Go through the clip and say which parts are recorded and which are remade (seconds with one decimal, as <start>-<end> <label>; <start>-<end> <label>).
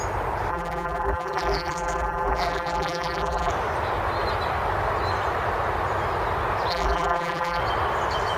0.0-0.5 recorded; 0.5-3.5 remade; 3.5-6.7 recorded; 6.7-7.6 remade; 7.6-8.4 recorded